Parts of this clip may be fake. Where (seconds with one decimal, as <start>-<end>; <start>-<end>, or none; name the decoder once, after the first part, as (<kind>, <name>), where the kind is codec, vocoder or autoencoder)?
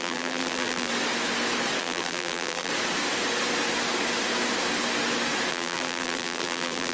0.0-0.9 (vocoder, BigVGAN v2); 1.8-2.7; 5.5-6.9